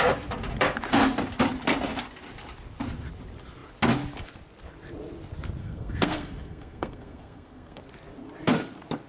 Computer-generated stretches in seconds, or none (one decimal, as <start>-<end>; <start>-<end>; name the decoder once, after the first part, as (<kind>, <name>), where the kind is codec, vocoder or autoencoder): 5.6-7.8 (codec, SNAC)